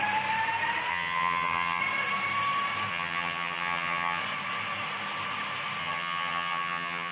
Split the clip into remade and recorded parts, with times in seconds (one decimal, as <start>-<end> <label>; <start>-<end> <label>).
0.0-0.9 recorded; 0.9-1.8 remade; 1.8-2.9 recorded; 2.9-4.2 remade; 4.2-5.8 recorded; 5.8-7.1 remade